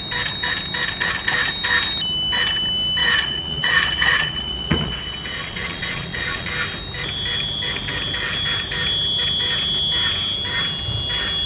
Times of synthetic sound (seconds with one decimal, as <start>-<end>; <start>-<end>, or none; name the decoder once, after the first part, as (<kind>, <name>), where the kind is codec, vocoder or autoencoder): 3.0-6.5 (vocoder, Vocos)